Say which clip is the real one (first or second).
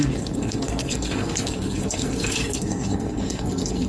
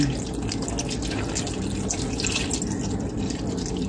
second